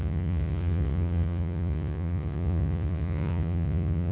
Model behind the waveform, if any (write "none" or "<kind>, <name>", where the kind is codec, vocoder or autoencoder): vocoder, Vocos